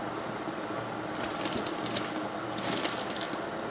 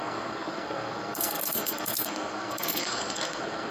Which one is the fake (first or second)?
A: second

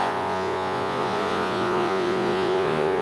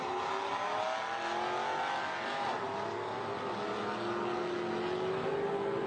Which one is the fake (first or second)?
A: first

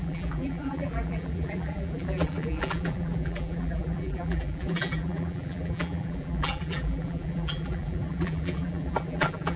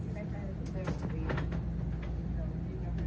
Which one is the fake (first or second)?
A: first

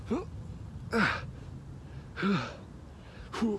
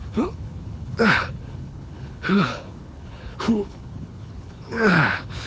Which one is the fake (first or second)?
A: second